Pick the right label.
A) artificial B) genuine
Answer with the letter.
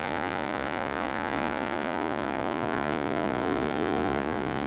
A